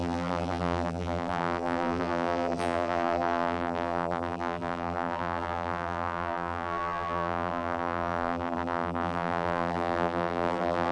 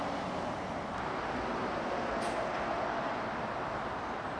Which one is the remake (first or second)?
first